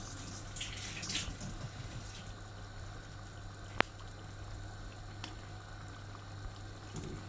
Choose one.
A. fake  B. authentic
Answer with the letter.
B